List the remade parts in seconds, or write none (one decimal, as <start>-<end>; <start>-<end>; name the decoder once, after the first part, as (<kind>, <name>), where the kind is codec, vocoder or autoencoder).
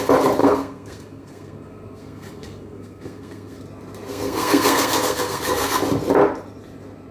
0.4-3.6 (codec, SNAC); 4.1-5.8